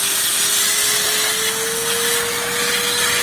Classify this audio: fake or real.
real